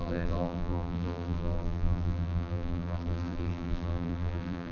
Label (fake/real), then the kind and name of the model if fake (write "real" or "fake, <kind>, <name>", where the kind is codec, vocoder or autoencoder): fake, vocoder, BigVGAN v2